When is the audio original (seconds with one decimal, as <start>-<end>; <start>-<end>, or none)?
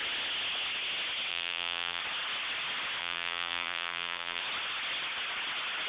0.0-1.3; 2.0-3.0; 4.4-5.9